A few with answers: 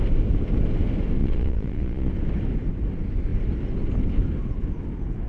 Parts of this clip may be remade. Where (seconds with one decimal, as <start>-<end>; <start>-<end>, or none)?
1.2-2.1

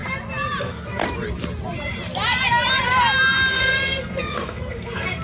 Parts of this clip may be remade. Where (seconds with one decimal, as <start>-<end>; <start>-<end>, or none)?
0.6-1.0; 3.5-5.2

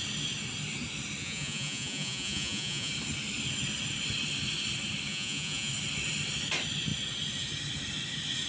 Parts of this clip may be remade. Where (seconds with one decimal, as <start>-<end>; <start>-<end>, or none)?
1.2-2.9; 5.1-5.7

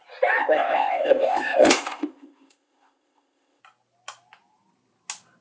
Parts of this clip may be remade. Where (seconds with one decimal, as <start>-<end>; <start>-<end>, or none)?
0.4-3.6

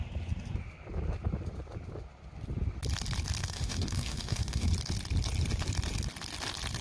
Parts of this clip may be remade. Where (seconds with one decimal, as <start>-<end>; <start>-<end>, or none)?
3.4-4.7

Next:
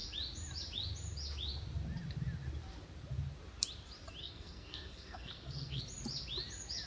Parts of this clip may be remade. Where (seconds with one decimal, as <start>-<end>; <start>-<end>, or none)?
4.2-5.8

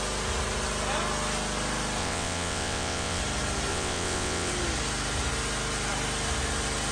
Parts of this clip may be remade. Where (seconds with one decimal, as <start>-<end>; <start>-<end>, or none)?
2.0-3.2; 3.7-4.5